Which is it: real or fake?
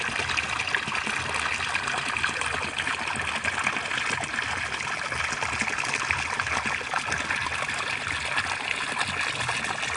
real